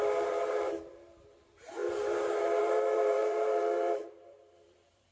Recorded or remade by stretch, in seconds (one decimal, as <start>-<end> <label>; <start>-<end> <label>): 0.0-1.8 remade; 1.8-2.6 recorded; 2.6-5.1 remade